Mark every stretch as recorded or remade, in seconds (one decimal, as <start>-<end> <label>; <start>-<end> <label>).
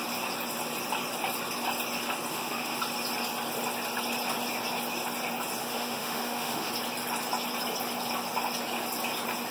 0.0-2.3 recorded; 2.3-2.8 remade; 2.8-5.6 recorded; 5.6-6.7 remade; 6.7-9.5 recorded